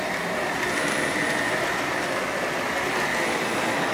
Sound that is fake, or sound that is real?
real